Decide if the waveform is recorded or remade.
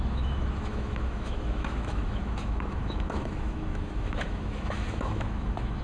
remade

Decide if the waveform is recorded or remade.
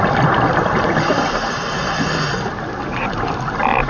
recorded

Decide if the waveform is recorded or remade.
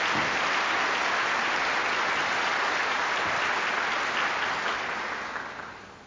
recorded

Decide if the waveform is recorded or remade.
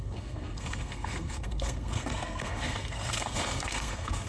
remade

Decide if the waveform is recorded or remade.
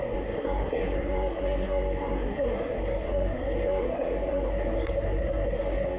remade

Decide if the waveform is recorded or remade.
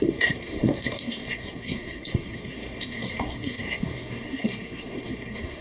remade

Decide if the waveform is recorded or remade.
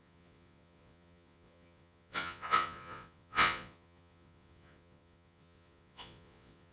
remade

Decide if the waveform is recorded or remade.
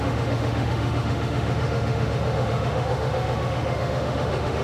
remade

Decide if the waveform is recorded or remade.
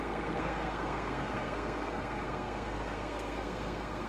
remade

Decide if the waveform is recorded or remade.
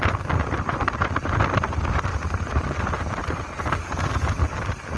recorded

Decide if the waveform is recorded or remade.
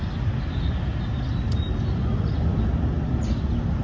recorded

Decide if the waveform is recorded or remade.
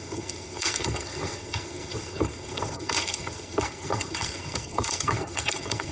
remade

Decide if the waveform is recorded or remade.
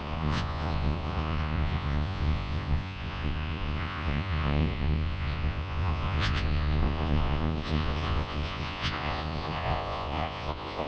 remade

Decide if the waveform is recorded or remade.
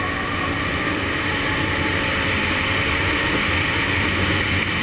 recorded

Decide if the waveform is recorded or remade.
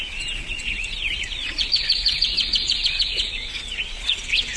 remade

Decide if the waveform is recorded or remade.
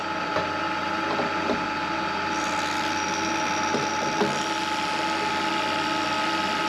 recorded